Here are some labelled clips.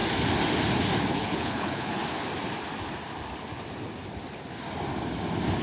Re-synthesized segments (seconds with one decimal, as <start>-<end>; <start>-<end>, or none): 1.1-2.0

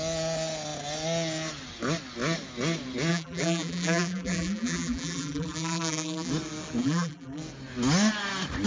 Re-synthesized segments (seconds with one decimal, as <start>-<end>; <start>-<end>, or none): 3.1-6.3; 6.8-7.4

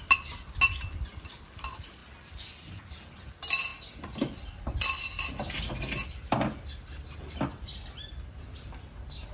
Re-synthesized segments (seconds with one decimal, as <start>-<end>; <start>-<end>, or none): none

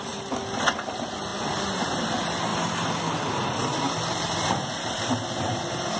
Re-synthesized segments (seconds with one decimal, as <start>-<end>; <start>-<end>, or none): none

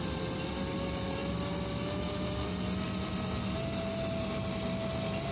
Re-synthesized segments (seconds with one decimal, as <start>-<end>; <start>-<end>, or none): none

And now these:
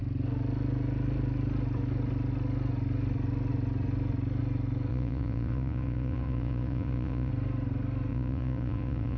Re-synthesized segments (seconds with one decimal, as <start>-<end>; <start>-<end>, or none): 4.9-7.3; 8.1-9.2